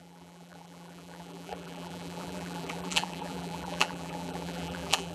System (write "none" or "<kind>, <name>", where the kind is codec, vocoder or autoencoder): vocoder, BigVGAN v2